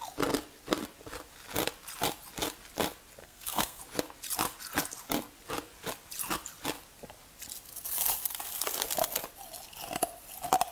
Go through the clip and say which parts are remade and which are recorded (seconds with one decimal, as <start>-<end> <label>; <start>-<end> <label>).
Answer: 0.0-3.2 recorded; 3.2-3.8 remade; 3.8-10.7 recorded